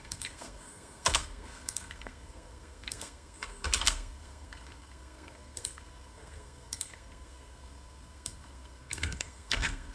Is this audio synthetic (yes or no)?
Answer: yes